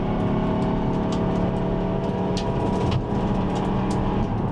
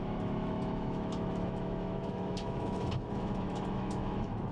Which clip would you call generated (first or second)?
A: second